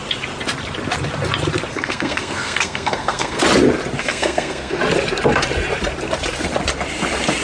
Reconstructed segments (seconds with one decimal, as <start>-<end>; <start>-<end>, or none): 1.7-3.4; 4.0-4.8